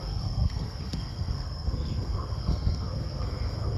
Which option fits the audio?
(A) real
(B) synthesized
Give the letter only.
B